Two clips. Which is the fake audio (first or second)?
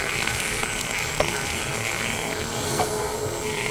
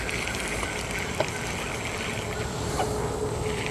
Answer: first